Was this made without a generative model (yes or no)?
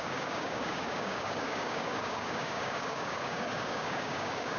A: no